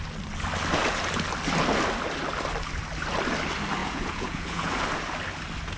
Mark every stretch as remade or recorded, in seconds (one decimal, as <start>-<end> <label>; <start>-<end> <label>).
0.0-3.8 recorded; 3.8-4.7 remade; 4.7-5.8 recorded